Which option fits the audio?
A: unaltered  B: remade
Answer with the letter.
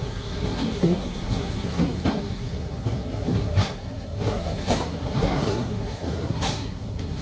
B